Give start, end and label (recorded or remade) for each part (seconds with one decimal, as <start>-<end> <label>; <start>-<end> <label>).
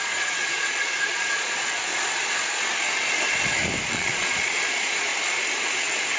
0.0-1.9 remade; 1.9-3.9 recorded; 3.9-5.1 remade; 5.1-6.2 recorded